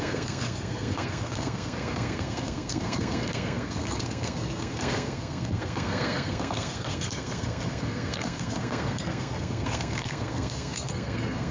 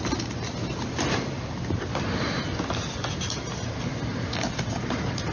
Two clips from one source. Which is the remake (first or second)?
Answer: first